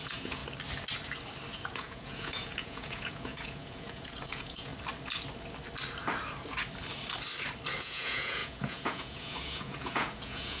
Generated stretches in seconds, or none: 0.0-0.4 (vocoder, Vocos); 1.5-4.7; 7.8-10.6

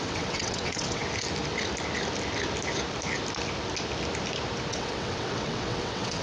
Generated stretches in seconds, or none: 0.0-1.0 (vocoder, WaveNeXt); 4.7-6.2

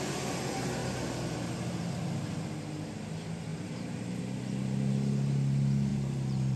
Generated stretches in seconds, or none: 3.5-4.2 (vocoder, BigVGAN v2); 5.9-6.6

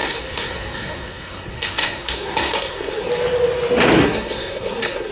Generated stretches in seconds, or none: 0.0-3.1 (codec, SNAC); 4.0-5.1

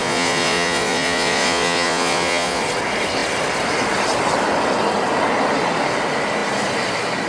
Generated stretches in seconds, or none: 0.0-2.6 (vocoder, Vocos)

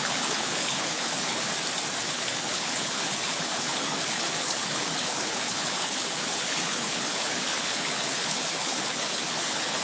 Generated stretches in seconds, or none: 0.0-1.5 (codec, HILCodec); 2.0-9.8

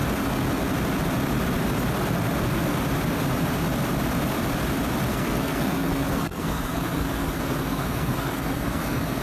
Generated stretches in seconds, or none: 5.1-9.2 (codec, SNAC)